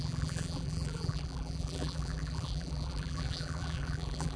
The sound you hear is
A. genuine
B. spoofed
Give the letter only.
B